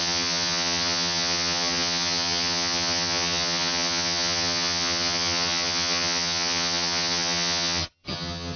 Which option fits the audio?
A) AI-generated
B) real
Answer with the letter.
A